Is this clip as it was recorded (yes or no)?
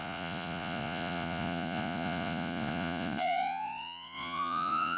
no